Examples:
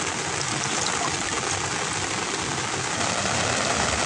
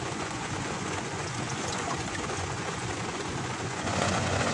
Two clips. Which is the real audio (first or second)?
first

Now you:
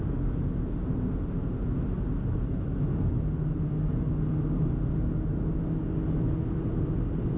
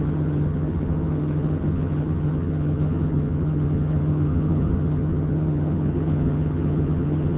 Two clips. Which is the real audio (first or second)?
first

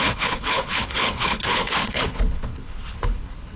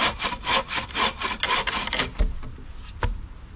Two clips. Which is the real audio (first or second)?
second